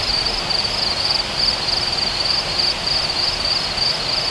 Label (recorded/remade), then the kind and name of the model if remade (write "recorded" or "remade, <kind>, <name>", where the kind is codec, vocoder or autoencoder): recorded